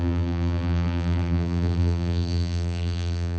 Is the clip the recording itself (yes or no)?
no